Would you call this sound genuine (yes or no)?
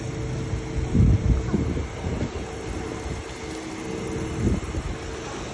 yes